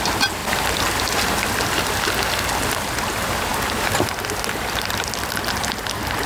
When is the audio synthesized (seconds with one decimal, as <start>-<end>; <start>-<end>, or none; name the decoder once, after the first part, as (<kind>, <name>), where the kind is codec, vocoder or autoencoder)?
none